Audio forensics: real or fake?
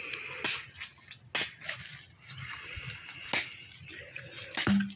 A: real